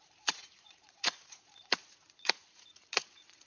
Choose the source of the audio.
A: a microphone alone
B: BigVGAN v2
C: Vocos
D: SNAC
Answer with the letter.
C